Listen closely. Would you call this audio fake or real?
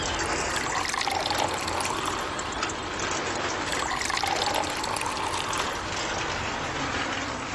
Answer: real